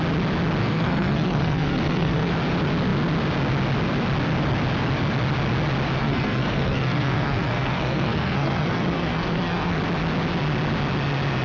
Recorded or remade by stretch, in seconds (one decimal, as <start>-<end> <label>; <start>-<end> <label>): 0.0-0.6 recorded; 0.6-2.3 remade; 2.3-6.0 recorded; 6.0-9.7 remade; 9.7-11.4 recorded